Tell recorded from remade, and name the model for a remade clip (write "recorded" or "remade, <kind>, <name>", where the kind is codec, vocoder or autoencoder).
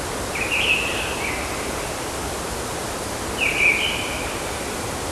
recorded